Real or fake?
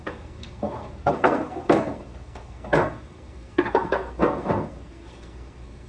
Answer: fake